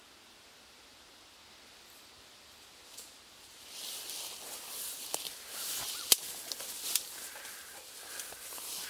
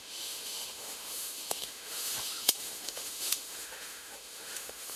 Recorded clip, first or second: first